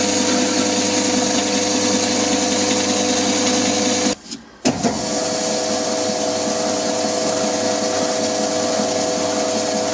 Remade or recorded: recorded